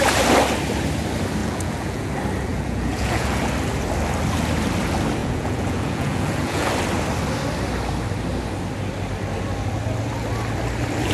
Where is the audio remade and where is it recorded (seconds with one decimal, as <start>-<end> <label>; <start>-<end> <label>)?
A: 0.0-1.4 recorded; 1.4-2.1 remade; 2.1-2.5 recorded; 2.5-3.4 remade; 3.4-5.2 recorded; 5.2-6.7 remade; 6.7-11.1 recorded